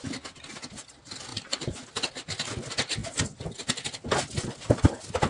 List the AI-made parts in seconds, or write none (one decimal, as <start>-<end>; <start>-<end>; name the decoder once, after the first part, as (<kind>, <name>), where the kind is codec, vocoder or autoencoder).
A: 1.3-2.1 (vocoder, BigVGAN v2)